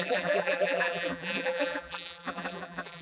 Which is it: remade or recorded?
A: remade